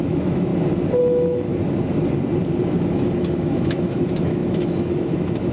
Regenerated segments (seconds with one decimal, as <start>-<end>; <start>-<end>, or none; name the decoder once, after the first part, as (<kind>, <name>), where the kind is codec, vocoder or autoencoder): 0.0-0.5 (autoencoder, DAC-VAE); 1.0-1.5; 3.4-5.5